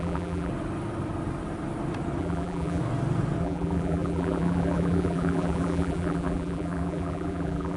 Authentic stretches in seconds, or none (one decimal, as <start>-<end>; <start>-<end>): 0.5-2.2; 2.8-3.4